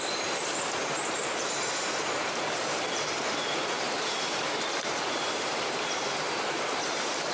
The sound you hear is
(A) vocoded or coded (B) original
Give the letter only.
A